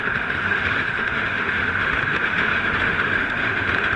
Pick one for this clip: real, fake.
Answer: fake